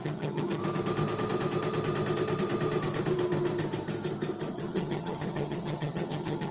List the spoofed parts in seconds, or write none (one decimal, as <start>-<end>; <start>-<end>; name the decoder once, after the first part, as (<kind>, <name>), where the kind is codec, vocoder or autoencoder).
0.0-0.6 (vocoder, HiFi-GAN); 4.5-6.5